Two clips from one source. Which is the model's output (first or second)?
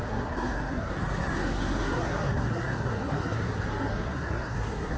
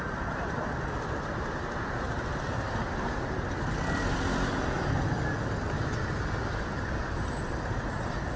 first